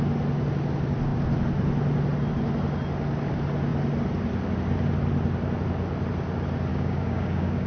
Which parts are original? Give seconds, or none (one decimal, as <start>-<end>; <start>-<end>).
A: 0.0-6.7